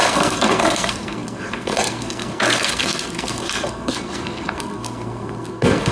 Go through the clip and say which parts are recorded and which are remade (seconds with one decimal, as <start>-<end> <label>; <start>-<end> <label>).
0.0-5.9 remade